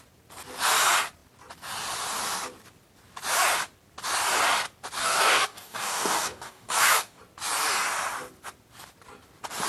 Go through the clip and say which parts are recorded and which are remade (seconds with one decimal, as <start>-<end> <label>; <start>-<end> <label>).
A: 0.0-5.0 recorded; 5.0-7.2 remade; 7.2-9.7 recorded